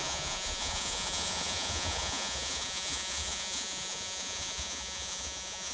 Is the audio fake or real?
fake